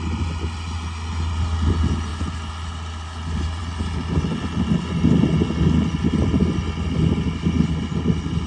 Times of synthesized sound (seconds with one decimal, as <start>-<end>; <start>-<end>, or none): none